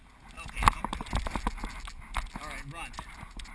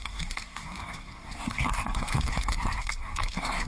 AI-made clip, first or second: second